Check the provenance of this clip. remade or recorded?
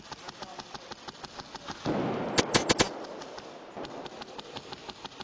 recorded